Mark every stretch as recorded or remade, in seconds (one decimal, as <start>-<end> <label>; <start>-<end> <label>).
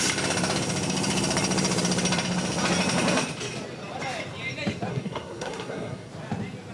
0.0-4.9 recorded; 4.9-6.1 remade; 6.1-6.7 recorded